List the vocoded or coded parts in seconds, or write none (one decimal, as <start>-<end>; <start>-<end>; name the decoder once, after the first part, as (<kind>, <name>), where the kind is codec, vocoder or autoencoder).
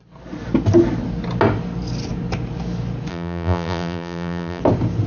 3.1-4.6 (vocoder, BigVGAN v2)